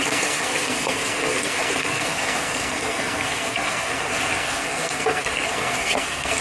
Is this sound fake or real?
fake